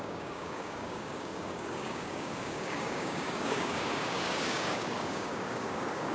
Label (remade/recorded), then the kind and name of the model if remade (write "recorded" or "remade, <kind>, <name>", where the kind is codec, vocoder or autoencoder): remade, codec, DAC